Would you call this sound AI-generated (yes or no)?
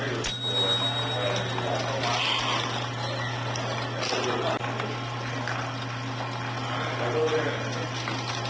no